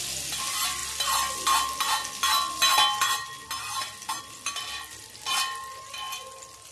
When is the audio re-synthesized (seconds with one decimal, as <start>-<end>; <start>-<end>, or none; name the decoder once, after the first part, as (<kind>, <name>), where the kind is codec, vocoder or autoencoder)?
none